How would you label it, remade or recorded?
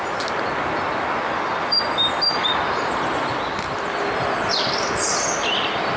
recorded